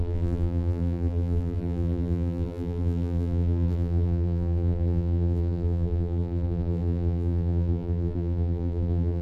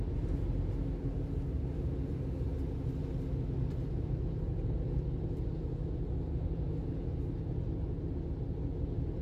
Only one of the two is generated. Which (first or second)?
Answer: first